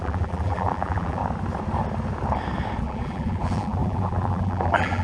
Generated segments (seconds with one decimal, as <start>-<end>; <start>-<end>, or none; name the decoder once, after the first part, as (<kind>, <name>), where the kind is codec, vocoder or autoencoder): 0.0-1.2 (vocoder, BigVGAN v2); 2.8-5.0